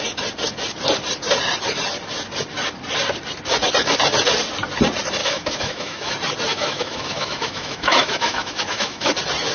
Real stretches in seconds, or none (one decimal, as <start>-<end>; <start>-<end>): 0.0-5.2; 6.1-6.5; 9.1-9.5

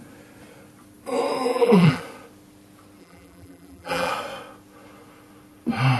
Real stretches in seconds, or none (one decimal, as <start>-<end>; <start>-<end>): 0.0-1.5; 2.0-3.0; 4.1-6.0

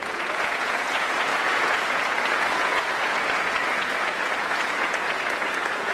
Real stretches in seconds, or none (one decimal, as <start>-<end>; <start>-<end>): none